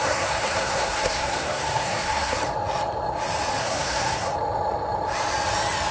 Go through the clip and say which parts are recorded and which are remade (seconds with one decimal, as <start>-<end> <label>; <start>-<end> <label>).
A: 0.0-2.4 remade; 2.4-3.6 recorded; 3.6-4.3 remade; 4.3-5.9 recorded

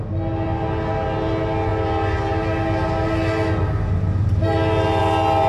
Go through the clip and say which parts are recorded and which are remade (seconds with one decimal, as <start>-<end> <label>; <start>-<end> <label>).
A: 0.0-5.5 recorded

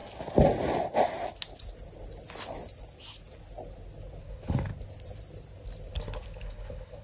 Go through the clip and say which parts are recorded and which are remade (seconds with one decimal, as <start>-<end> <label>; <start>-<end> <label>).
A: 0.0-4.2 recorded; 4.2-4.7 remade; 4.7-5.9 recorded; 5.9-7.0 remade

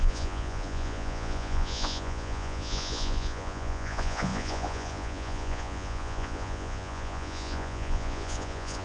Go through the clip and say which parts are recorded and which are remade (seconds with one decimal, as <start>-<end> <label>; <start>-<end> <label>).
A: 0.0-8.8 remade

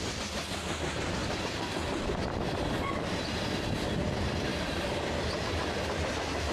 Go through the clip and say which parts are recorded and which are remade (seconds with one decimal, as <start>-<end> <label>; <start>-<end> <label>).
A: 0.0-4.5 recorded; 4.5-5.8 remade; 5.8-6.5 recorded

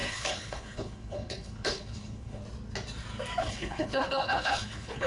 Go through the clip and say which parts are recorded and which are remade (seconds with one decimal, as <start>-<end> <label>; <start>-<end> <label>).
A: 0.0-2.4 remade; 2.4-3.4 recorded; 3.4-5.1 remade

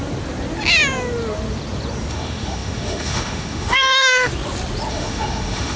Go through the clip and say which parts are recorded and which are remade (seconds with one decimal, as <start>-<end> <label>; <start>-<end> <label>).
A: 0.0-2.1 recorded; 2.1-4.3 remade; 4.3-4.9 recorded; 4.9-5.8 remade

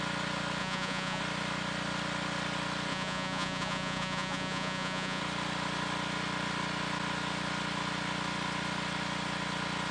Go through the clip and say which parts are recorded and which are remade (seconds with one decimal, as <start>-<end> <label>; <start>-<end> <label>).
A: 0.0-0.6 recorded; 0.6-1.2 remade; 1.2-2.9 recorded; 2.9-5.2 remade; 5.2-9.9 recorded